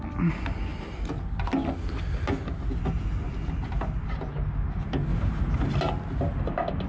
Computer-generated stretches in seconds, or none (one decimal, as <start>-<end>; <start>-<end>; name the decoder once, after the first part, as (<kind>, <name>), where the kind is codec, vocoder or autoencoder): 5.1-5.8 (vocoder, BigVGAN v2)